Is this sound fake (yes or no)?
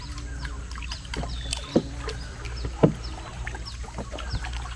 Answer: no